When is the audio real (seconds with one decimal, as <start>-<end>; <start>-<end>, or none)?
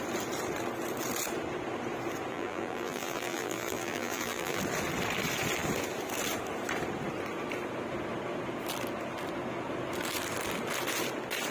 0.0-2.3; 4.6-11.5